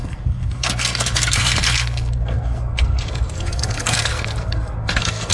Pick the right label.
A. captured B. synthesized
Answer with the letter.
B